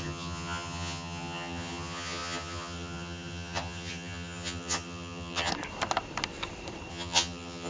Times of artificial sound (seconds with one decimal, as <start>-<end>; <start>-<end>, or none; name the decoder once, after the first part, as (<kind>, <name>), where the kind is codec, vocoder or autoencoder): 0.0-5.5 (vocoder, HiFi-GAN); 6.9-7.7